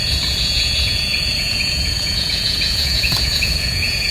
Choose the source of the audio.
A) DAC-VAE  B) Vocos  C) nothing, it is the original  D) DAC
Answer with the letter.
B